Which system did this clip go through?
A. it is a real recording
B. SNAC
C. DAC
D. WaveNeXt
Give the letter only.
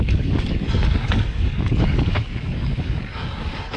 C